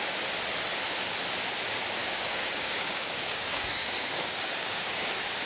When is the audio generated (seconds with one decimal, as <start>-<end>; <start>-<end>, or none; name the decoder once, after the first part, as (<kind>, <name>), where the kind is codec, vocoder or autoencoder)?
2.0-5.1 (codec, DAC)